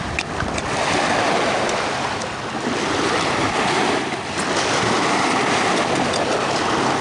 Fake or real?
real